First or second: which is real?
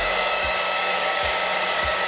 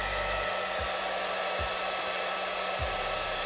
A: second